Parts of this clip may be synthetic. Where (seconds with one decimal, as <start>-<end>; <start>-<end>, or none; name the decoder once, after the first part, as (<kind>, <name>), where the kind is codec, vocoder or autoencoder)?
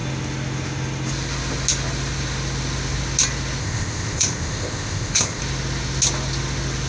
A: 3.6-5.4 (codec, ZipCodec)